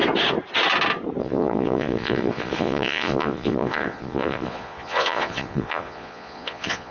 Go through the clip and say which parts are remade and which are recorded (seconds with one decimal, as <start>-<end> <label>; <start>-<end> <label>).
0.0-1.2 recorded; 1.2-6.9 remade